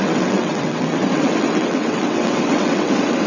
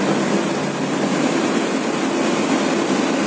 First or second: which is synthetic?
first